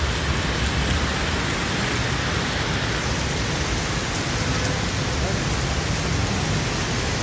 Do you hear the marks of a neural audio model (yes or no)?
no